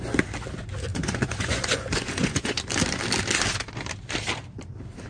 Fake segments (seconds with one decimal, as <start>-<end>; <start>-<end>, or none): 0.9-2.6